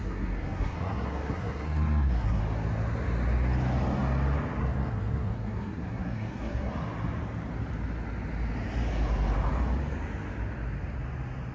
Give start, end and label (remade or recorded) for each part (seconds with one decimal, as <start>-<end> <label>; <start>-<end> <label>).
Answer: 0.0-2.4 remade; 2.4-4.6 recorded; 4.6-6.7 remade; 6.7-11.5 recorded